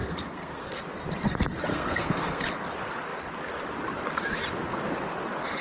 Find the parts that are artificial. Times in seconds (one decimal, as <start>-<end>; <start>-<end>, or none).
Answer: 0.0-0.8; 1.7-2.4